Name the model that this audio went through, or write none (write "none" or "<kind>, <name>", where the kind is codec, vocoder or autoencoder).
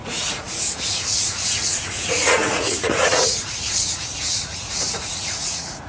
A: vocoder, Vocos